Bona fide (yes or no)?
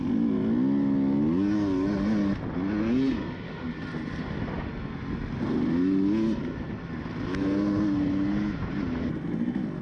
yes